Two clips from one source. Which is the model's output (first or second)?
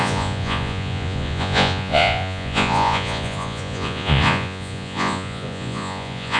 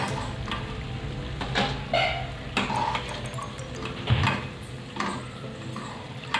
first